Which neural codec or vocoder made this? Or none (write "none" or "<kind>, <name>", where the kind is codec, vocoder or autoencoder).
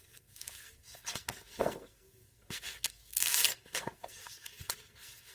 codec, SNAC